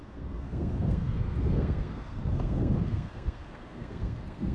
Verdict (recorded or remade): remade